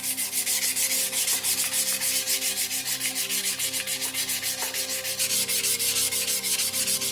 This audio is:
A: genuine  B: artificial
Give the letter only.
A